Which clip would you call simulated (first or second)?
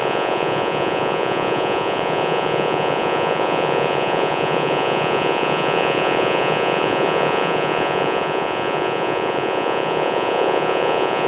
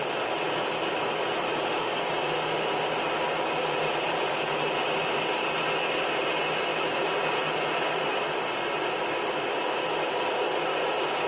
first